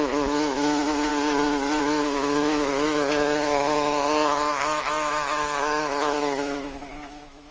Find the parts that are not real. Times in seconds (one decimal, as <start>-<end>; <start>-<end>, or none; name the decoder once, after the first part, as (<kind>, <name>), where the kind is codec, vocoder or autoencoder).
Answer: 0.0-1.1 (autoencoder, DAC-VAE); 1.8-7.5